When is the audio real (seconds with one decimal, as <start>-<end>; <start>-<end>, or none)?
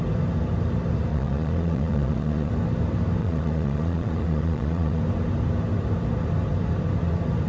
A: 0.0-1.1; 2.5-3.2; 5.0-7.5